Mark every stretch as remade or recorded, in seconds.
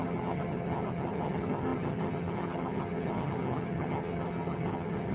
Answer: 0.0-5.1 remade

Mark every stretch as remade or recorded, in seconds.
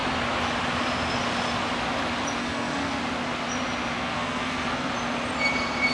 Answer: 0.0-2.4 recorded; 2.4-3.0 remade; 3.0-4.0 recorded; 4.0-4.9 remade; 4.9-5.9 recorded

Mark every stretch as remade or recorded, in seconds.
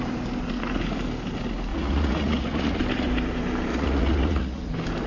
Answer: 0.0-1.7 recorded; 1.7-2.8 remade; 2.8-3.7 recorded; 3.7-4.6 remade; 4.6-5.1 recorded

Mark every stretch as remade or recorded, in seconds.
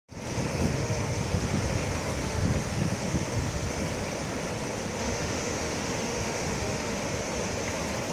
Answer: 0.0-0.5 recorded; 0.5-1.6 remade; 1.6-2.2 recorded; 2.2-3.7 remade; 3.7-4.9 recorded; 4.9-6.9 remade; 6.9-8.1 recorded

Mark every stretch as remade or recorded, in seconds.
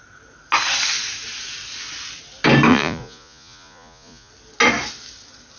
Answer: 0.0-2.7 recorded; 2.7-4.3 remade; 4.3-5.6 recorded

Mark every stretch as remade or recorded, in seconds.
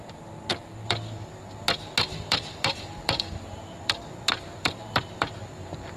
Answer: 0.0-0.5 recorded; 0.5-1.3 remade; 1.3-2.1 recorded; 2.1-6.0 remade